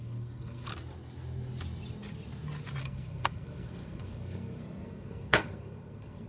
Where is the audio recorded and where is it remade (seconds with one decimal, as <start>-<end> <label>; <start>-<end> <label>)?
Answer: 0.0-0.7 remade; 0.7-2.8 recorded; 2.8-6.3 remade